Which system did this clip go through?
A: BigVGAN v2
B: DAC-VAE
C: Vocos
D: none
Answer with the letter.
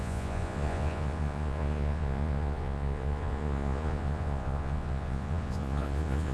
C